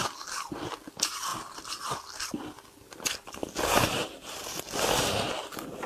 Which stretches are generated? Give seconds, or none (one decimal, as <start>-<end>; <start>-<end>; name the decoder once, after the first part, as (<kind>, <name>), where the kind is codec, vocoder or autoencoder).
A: 0.0-1.3 (vocoder, BigVGAN v2); 2.3-5.9